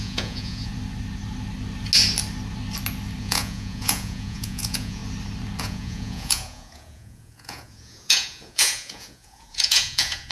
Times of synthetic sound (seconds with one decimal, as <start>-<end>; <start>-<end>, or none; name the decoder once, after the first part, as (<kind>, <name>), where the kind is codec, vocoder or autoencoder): 0.0-0.7 (vocoder, Vocos); 3.2-5.0; 5.6-10.3